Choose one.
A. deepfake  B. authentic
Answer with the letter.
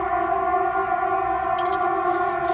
B